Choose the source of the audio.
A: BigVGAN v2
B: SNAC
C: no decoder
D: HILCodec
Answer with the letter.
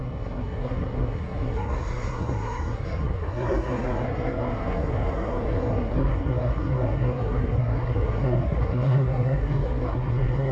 B